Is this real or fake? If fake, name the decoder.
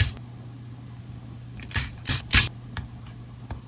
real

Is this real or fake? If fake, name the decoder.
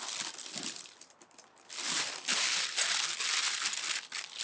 real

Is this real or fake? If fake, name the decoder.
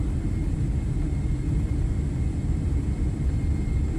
real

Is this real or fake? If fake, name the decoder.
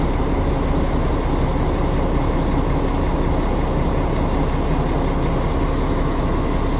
real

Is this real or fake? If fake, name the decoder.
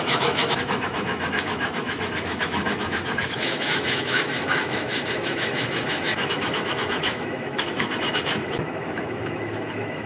fake, autoencoder, DAC-VAE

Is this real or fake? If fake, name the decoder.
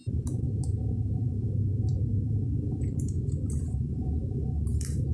fake, vocoder, BigVGAN v2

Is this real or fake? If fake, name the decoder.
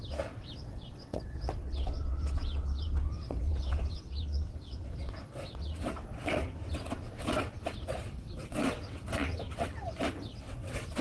fake, vocoder, WaveNeXt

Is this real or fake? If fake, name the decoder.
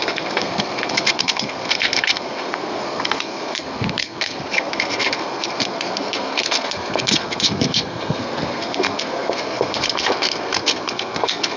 fake, codec, SNAC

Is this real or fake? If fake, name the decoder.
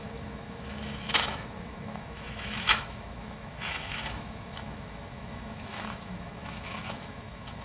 fake, autoencoder, DAC-VAE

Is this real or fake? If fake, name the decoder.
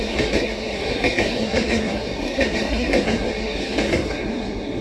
fake, codec, SNAC